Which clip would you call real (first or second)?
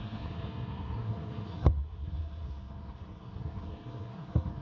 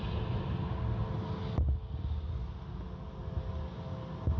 second